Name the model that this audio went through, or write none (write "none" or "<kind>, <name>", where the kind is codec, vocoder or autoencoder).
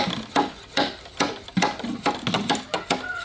none